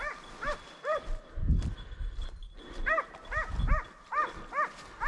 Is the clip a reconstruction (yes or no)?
no